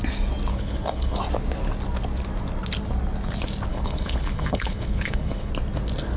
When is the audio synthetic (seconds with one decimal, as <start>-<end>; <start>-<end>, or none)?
0.5-1.2; 3.7-5.5